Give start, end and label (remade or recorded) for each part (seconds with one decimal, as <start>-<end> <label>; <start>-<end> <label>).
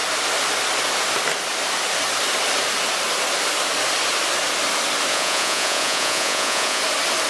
0.0-5.1 recorded; 5.1-6.8 remade; 6.8-7.3 recorded